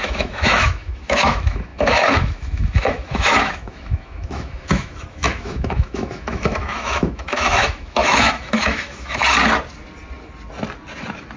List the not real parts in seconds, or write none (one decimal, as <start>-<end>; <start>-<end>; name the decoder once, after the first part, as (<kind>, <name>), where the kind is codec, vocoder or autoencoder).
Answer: 0.0-9.2 (autoencoder, DAC-VAE)